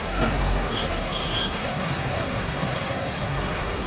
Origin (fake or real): fake